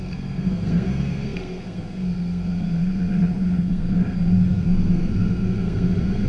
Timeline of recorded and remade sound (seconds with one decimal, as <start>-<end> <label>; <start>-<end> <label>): 0.0-6.3 remade